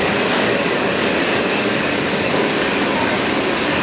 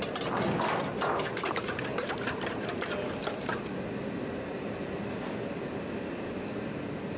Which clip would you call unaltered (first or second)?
second